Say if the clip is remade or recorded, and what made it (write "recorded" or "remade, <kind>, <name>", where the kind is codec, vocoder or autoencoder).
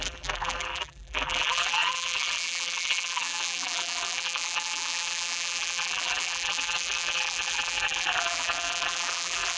remade, vocoder, BigVGAN v2